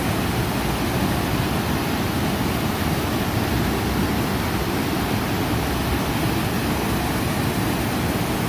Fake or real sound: real